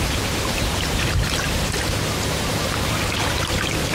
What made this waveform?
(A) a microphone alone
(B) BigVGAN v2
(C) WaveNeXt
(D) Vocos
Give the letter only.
A